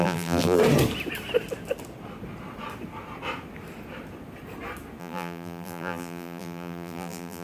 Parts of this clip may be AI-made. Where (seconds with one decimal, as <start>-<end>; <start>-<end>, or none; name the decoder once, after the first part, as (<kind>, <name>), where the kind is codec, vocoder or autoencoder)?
0.0-0.6 (vocoder, BigVGAN v2); 5.0-7.4